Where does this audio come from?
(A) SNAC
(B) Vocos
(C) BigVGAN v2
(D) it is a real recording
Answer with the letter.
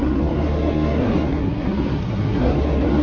A